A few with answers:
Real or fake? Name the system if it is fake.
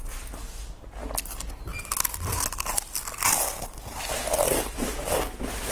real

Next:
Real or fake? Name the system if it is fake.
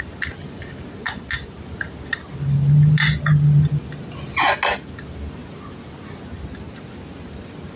real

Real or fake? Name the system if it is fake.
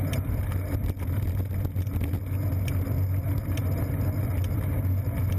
real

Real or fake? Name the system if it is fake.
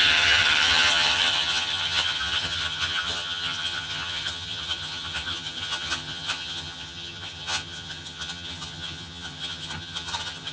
fake, vocoder, HiFi-GAN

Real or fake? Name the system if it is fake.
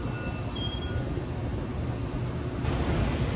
real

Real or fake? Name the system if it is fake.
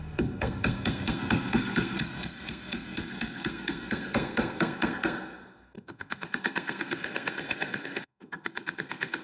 fake, codec, SNAC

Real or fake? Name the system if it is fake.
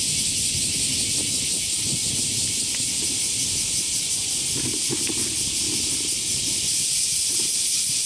real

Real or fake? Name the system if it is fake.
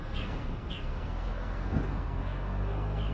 fake, codec, SNAC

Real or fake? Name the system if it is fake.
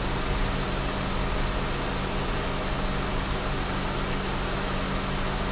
real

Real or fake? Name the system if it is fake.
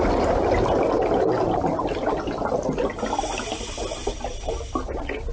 real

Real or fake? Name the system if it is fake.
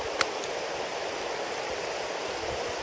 real